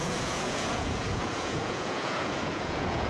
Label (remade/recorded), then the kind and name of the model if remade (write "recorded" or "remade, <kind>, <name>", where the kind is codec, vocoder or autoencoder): remade, vocoder, Vocos